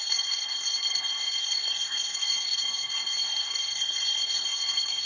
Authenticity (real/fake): fake